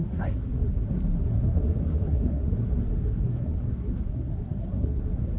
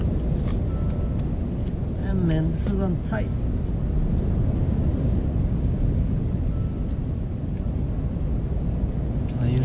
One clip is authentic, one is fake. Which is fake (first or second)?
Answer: first